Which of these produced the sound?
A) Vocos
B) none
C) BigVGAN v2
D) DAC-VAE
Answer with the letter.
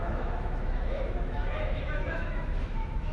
D